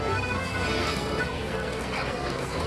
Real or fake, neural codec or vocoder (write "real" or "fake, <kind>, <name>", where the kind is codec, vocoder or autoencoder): fake, codec, SNAC